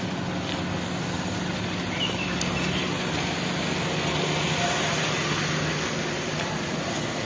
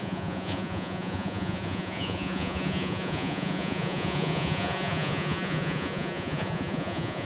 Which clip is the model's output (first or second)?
second